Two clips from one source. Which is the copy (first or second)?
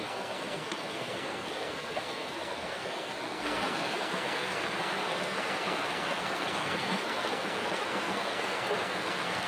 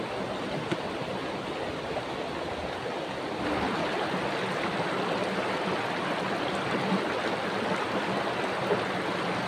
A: first